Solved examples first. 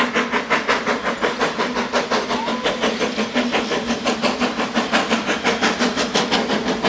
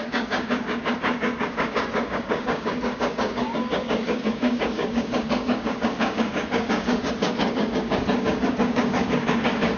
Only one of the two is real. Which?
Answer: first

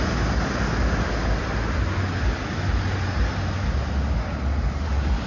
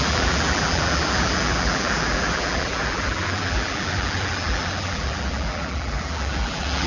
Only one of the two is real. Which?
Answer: first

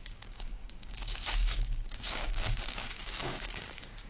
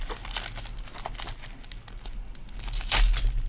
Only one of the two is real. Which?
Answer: second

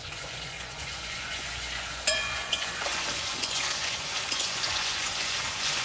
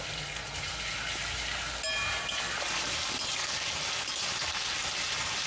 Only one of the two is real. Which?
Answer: second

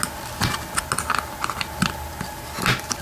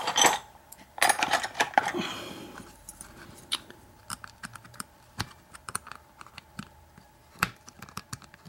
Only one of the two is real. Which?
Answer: first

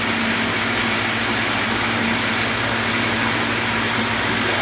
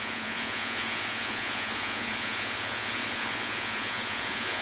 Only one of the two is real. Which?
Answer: first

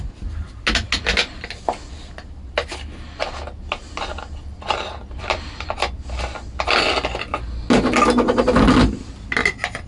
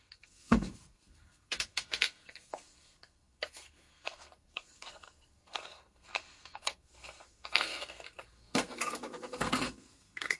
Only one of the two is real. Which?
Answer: first